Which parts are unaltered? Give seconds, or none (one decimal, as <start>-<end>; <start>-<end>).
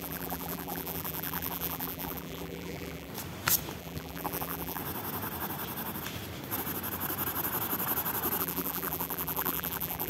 3.1-3.8; 4.8-8.4